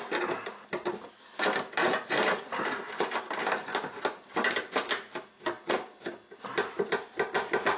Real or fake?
real